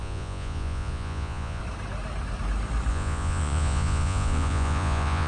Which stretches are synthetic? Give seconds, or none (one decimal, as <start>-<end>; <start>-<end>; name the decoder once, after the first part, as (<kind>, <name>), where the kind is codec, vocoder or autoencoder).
0.0-1.6 (vocoder, Vocos); 2.9-5.3